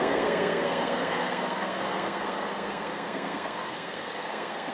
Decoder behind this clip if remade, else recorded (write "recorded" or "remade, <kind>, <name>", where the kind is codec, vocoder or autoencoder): remade, codec, SNAC